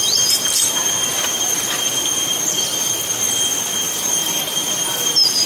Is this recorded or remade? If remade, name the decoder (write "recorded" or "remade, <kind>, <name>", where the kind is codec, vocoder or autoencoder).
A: recorded